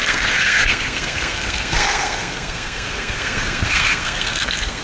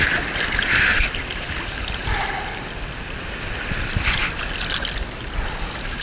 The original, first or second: second